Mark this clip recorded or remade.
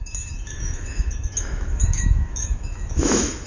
remade